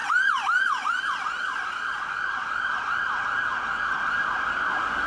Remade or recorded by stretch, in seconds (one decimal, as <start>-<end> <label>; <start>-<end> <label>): 0.0-2.0 remade; 2.0-5.1 recorded